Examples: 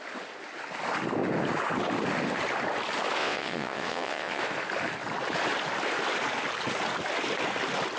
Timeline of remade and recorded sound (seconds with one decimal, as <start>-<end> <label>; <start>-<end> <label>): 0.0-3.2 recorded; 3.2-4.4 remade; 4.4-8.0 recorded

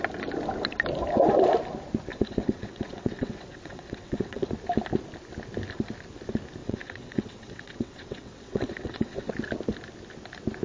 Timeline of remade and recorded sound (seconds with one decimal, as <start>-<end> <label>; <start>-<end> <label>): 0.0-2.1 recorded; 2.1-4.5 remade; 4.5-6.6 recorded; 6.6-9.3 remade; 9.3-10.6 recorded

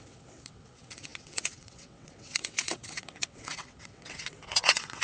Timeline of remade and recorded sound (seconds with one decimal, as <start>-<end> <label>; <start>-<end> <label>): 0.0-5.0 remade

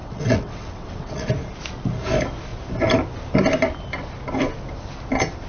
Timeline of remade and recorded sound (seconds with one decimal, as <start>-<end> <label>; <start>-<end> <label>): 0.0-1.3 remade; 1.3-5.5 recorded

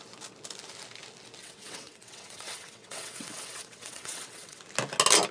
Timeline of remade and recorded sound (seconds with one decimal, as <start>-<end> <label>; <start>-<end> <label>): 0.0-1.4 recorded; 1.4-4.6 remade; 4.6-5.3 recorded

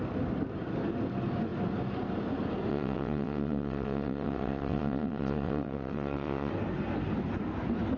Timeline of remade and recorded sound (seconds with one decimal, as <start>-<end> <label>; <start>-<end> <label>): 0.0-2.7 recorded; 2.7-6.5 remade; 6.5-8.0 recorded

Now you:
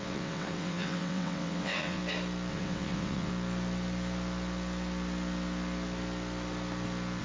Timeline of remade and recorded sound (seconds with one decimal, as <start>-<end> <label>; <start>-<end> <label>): 0.0-2.0 remade; 2.0-2.5 recorded; 2.5-3.3 remade; 3.3-7.2 recorded

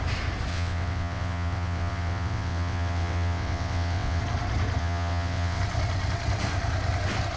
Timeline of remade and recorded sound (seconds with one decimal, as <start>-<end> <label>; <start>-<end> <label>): 0.0-0.5 recorded; 0.5-4.2 remade; 4.2-4.8 recorded; 4.8-5.6 remade; 5.6-7.4 recorded